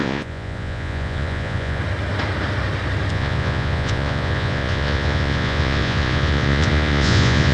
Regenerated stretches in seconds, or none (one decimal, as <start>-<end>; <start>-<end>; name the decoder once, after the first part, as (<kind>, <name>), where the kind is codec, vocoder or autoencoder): 0.0-1.8 (vocoder, Vocos); 3.1-7.5